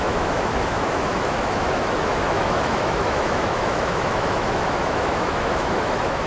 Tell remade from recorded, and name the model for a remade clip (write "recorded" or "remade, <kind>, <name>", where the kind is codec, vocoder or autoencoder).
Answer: remade, autoencoder, DAC-VAE